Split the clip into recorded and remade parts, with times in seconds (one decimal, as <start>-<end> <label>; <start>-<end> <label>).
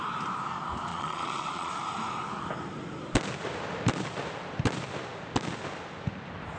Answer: 0.0-0.9 recorded; 0.9-1.7 remade; 1.7-6.6 recorded